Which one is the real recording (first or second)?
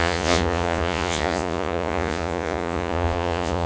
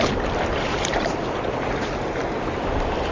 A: second